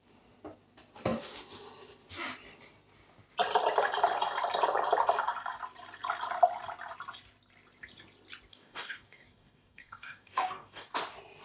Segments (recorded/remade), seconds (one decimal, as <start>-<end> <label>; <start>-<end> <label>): 0.0-8.5 recorded; 8.5-10.9 remade; 10.9-11.4 recorded